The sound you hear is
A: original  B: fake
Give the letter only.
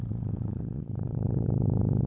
B